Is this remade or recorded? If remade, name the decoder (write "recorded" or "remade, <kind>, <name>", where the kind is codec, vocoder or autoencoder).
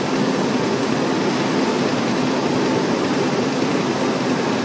recorded